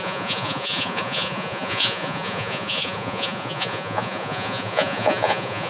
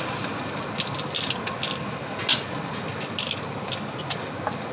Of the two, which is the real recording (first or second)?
second